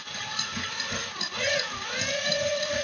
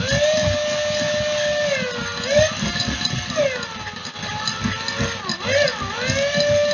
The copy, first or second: first